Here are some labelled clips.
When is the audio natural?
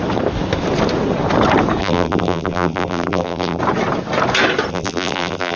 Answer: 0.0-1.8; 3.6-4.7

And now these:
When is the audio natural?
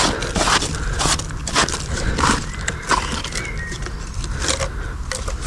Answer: 0.0-1.4; 2.7-5.5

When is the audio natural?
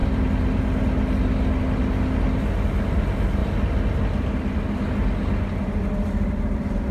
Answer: 0.0-6.9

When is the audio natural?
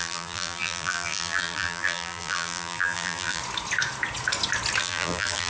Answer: 3.4-4.8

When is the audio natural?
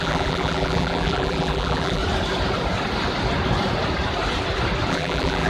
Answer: 2.0-4.9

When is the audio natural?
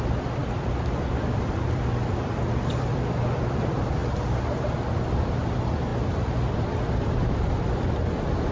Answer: 5.9-6.4